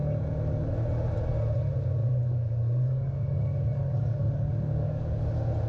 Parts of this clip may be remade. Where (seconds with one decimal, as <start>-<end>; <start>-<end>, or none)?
2.0-5.3